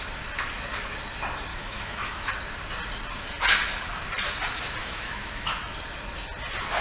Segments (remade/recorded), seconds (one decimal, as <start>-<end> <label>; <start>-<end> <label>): 0.0-1.5 recorded; 1.5-2.3 remade; 2.3-4.8 recorded; 4.8-5.5 remade; 5.5-6.8 recorded